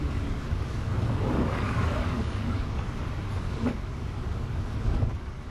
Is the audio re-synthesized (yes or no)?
yes